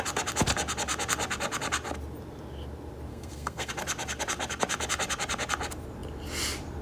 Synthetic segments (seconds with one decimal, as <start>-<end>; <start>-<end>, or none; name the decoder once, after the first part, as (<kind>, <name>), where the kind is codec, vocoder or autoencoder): 3.1-3.7 (codec, SNAC)